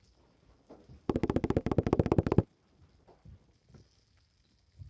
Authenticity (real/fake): real